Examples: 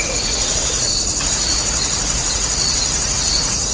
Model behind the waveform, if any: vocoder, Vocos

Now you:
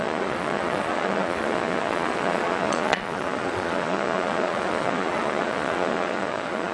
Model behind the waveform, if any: vocoder, Vocos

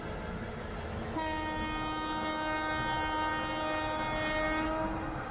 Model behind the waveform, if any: none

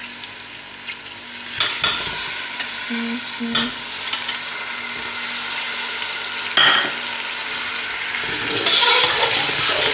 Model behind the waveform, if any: none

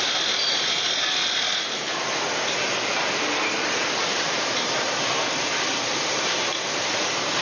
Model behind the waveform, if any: vocoder, BigVGAN v2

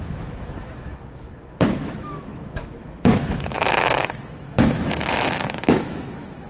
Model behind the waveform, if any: autoencoder, DAC-VAE